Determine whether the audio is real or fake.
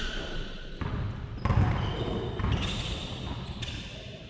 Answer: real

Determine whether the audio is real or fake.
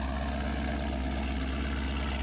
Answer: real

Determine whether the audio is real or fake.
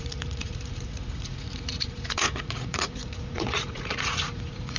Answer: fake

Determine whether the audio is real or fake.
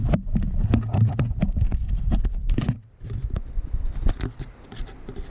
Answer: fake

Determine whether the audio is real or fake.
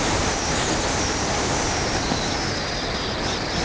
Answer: real